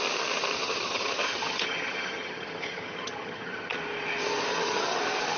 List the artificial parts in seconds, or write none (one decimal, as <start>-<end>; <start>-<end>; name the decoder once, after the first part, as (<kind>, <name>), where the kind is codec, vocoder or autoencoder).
0.6-3.8 (vocoder, HiFi-GAN); 4.5-5.0